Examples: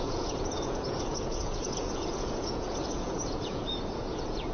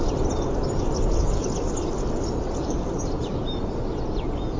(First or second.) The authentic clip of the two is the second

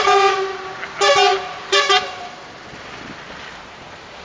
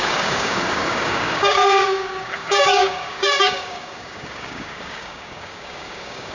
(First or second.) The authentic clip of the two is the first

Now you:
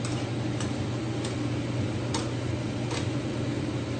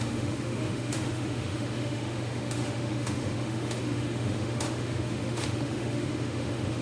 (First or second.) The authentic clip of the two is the first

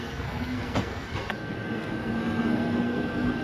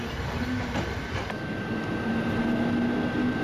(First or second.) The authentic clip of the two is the second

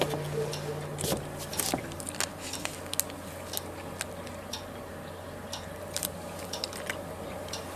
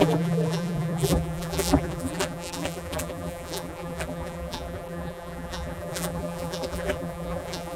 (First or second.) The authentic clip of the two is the first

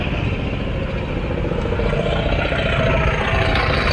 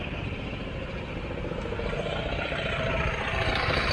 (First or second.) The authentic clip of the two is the first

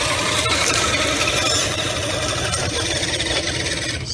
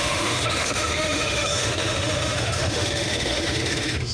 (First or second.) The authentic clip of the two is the first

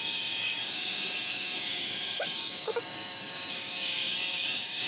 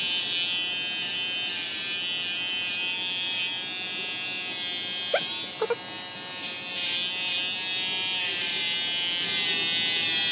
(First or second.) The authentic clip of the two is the second